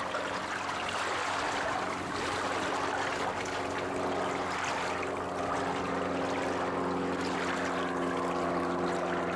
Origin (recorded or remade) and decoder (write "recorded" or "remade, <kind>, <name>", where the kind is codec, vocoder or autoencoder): recorded